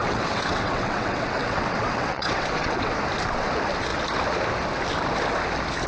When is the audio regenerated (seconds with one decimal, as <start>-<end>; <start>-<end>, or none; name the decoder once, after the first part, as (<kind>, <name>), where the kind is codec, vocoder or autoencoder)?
0.0-3.0 (vocoder, WaveNeXt)